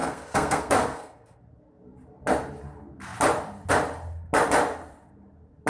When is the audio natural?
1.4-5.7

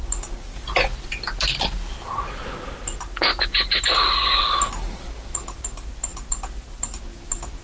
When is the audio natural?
0.0-7.6

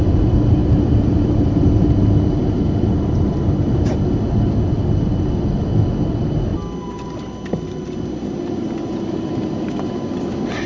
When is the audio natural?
0.0-0.6; 1.9-10.7

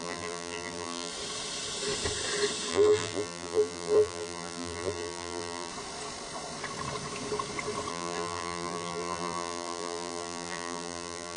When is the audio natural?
1.1-2.7; 5.7-7.9

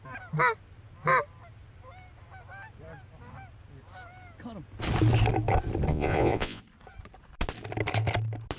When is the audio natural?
0.0-5.9; 6.6-8.6